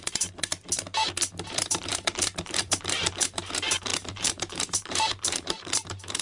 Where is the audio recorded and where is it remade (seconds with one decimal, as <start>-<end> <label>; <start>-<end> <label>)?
0.0-0.5 remade; 0.5-1.5 recorded; 1.5-6.2 remade